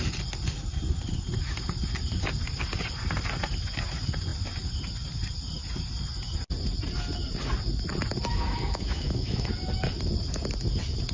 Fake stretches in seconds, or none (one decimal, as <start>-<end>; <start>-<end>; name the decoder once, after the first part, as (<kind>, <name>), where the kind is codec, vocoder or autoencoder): 8.3-9.5 (autoencoder, DAC-VAE)